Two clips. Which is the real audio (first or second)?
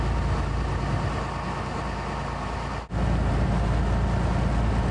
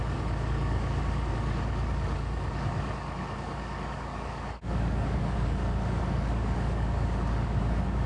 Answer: first